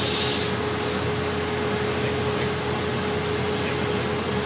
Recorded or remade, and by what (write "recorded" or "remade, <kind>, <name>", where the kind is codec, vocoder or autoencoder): recorded